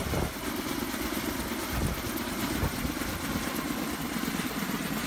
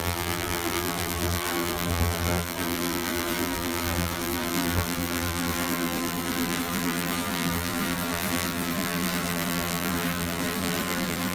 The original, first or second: first